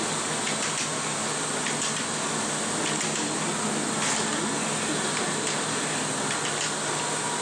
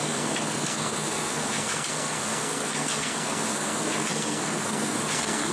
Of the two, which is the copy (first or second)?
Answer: second